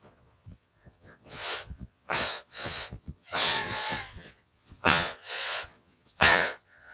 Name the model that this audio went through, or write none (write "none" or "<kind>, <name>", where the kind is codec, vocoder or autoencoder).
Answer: vocoder, Vocos